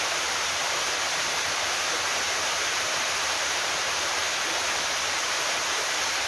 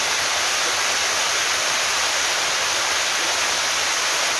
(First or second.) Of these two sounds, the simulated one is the first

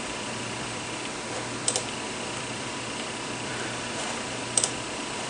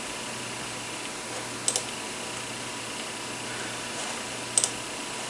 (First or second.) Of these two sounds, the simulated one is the first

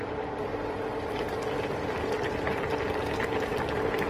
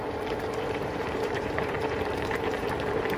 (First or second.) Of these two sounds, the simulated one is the second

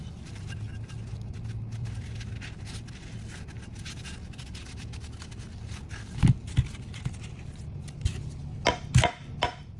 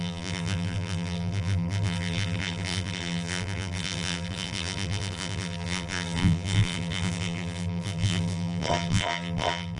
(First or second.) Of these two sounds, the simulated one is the second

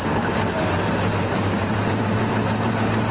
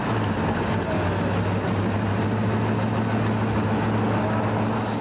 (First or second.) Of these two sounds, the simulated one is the first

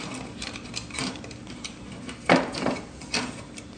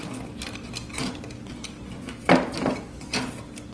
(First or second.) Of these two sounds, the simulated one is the first